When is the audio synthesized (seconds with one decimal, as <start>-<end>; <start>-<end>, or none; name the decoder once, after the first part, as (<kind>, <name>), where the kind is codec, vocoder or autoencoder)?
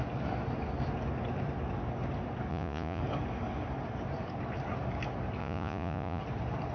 2.5-3.0 (vocoder, Vocos); 5.4-6.2